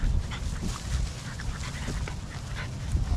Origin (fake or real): real